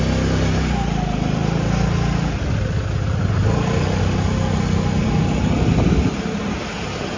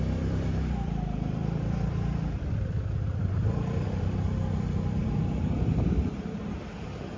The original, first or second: first